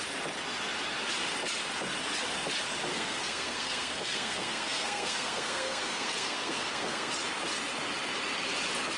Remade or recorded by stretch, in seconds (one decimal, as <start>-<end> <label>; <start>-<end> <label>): 0.0-2.9 recorded; 2.9-7.1 remade; 7.1-9.0 recorded